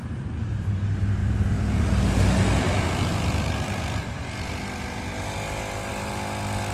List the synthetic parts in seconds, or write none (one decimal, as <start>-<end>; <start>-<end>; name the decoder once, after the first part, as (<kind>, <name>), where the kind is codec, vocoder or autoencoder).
1.2-2.0 (vocoder, BigVGAN v2)